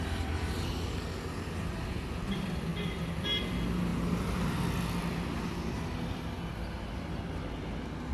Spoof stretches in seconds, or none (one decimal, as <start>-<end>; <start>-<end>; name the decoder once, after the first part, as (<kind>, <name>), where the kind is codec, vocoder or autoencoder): none